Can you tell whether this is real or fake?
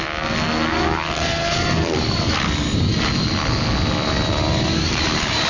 real